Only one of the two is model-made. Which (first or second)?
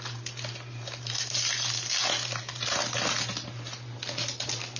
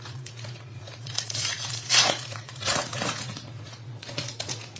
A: second